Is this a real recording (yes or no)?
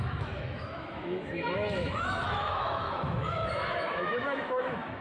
no